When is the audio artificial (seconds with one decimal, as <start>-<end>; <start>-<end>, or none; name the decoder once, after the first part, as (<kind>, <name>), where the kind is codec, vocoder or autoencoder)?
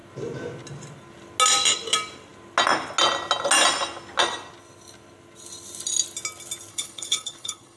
6.7-7.8 (codec, HILCodec)